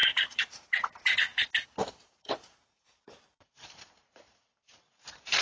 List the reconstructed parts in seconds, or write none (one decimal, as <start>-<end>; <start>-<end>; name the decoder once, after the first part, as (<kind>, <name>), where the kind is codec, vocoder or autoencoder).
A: 0.0-1.0 (vocoder, BigVGAN v2); 1.8-5.0